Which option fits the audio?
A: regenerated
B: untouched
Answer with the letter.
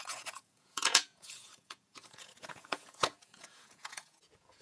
A